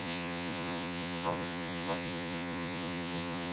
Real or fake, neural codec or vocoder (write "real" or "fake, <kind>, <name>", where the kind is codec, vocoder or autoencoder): fake, vocoder, Vocos